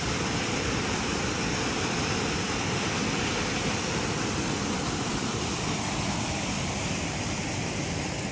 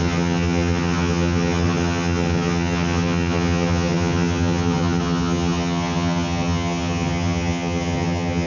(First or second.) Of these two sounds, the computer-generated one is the second